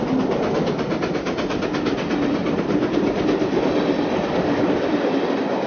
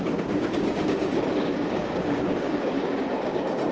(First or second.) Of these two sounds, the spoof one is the second